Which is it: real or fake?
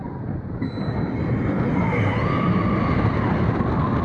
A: real